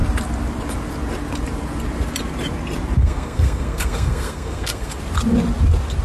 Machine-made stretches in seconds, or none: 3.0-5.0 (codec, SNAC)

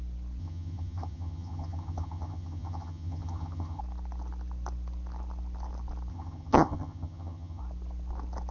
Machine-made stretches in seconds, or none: 0.4-3.8 (vocoder, HiFi-GAN); 6.1-7.6

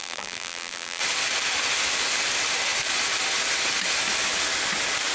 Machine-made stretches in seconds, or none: 0.0-1.0 (vocoder, BigVGAN v2)

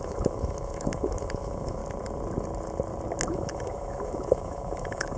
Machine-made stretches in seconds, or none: 0.0-1.8 (autoencoder, DAC-VAE); 3.3-5.2